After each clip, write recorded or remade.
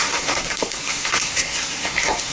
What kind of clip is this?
remade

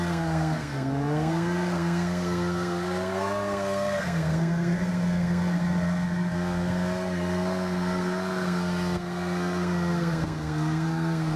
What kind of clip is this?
remade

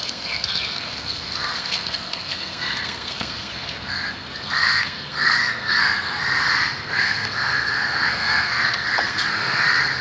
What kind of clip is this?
remade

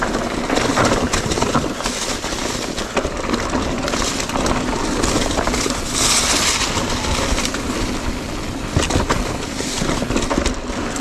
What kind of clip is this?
recorded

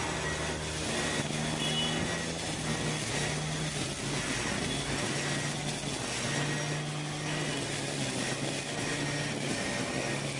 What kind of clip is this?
recorded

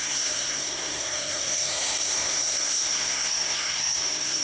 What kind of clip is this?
remade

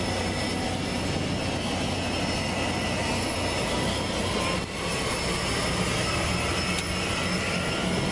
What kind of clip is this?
recorded